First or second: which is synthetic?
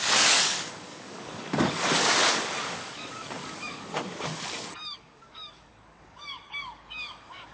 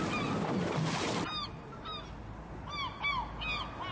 first